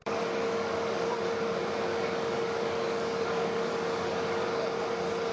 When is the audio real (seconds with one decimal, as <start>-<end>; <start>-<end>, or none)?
1.4-1.9; 4.8-5.3